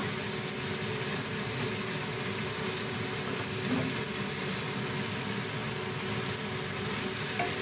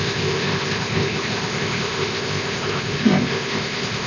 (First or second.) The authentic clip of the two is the first